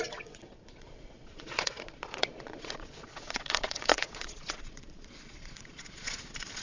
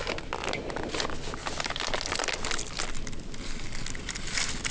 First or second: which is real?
second